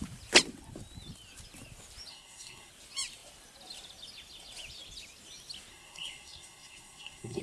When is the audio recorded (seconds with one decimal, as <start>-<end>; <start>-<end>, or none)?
0.0-2.1; 2.7-5.7